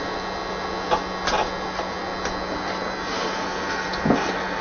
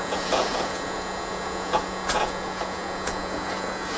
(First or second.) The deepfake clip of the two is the second